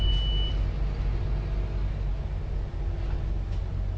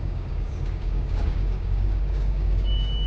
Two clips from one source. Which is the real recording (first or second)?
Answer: first